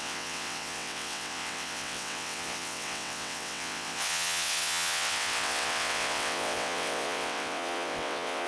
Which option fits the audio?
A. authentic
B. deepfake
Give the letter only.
B